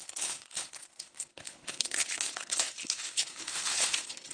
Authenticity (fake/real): fake